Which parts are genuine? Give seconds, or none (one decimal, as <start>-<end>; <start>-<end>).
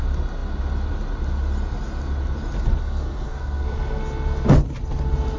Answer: 0.0-2.8; 4.0-5.4